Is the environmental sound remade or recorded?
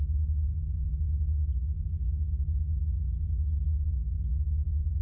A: recorded